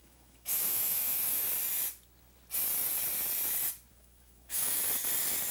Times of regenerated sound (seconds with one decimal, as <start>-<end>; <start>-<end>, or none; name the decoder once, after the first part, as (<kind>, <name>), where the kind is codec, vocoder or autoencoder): 0.0-1.5 (autoencoder, DAC-VAE); 3.9-4.8